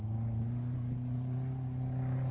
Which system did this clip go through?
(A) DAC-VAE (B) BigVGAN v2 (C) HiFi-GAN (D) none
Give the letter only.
D